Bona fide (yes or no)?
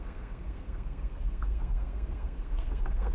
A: no